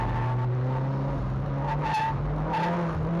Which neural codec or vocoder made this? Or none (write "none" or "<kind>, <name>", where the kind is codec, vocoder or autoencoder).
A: none